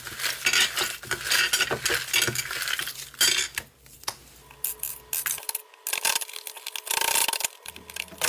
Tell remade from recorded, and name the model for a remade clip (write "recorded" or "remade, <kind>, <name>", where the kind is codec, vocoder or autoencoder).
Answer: recorded